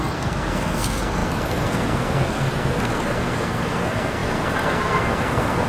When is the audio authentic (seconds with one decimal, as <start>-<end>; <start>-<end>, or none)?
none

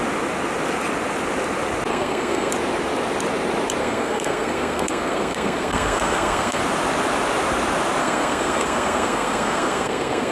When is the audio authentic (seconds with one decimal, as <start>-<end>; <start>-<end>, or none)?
0.0-1.9; 2.5-3.8; 6.6-8.0

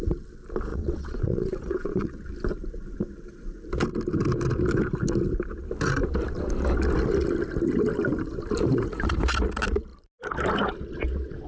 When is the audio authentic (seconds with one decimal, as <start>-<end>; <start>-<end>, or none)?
0.0-0.7; 2.2-11.5